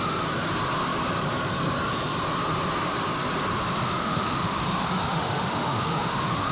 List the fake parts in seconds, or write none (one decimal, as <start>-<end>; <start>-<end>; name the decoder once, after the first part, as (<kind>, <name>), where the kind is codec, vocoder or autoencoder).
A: 4.0-6.5 (autoencoder, DAC-VAE)